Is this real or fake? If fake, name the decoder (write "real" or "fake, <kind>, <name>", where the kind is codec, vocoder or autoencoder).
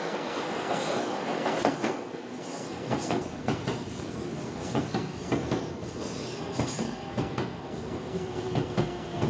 fake, codec, SNAC